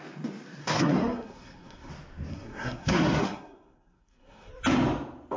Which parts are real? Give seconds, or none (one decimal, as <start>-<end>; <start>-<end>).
0.0-0.6; 1.9-2.3; 4.5-5.4